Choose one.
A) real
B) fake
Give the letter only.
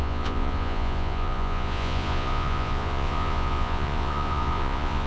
B